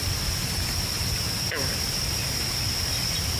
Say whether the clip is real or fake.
real